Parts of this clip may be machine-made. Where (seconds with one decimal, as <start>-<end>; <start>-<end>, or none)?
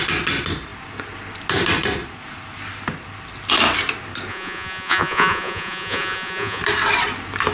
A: 4.3-6.6